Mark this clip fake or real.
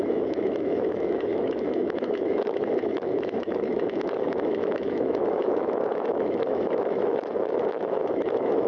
fake